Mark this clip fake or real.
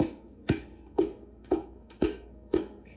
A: fake